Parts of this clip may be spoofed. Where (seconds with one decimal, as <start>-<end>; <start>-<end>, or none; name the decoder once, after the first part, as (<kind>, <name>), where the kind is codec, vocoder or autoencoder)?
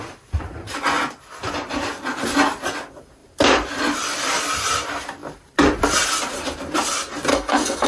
7.3-7.9 (codec, SNAC)